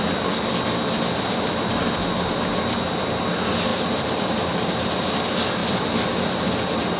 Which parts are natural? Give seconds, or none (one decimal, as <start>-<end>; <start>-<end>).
0.0-3.7; 5.0-5.6